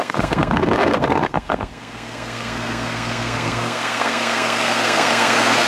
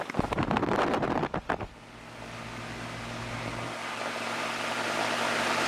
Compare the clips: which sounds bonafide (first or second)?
second